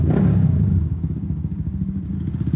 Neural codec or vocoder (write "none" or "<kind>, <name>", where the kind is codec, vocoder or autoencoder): codec, DAC